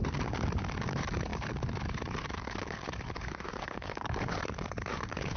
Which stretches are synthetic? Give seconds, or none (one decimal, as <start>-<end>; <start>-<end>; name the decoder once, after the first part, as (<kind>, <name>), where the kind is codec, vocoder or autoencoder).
0.0-5.4 (codec, DAC)